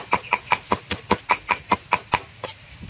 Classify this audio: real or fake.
real